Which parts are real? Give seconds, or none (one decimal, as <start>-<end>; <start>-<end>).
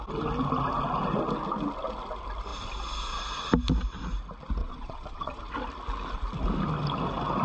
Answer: 0.0-4.6; 5.4-7.4